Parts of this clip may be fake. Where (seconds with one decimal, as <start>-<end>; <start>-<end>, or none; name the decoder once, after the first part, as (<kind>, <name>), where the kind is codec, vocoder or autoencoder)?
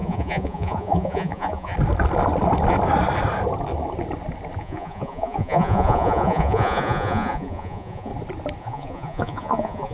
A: 0.0-1.7 (vocoder, Vocos); 4.6-8.1; 8.6-9.9